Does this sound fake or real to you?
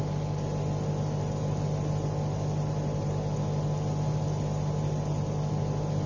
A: real